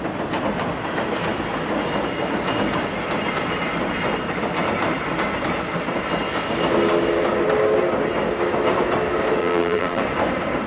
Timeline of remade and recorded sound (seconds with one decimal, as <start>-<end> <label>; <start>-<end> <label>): 0.0-9.4 recorded; 9.4-10.0 remade; 10.0-10.7 recorded